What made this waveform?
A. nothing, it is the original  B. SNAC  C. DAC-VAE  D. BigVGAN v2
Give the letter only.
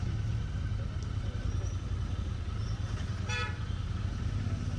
A